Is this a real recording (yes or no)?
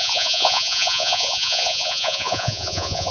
no